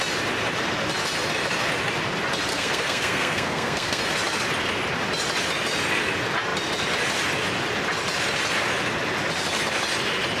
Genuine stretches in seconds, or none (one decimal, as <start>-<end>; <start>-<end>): 0.0-2.5; 4.0-10.4